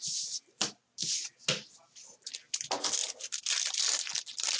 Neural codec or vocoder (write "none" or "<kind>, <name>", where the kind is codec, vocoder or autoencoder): none